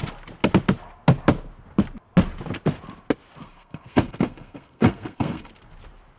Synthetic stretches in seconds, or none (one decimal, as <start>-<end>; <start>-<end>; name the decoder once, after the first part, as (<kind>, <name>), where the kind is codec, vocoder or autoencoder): 3.4-5.5 (codec, SNAC)